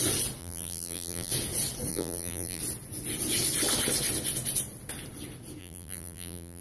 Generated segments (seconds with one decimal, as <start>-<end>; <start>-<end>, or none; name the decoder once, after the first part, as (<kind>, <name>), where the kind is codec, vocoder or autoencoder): 0.4-1.3 (vocoder, BigVGAN v2); 1.9-2.6; 5.6-6.6